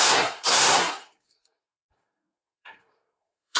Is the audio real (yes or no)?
no